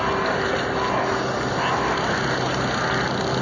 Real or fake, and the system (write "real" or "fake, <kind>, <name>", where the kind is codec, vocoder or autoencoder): real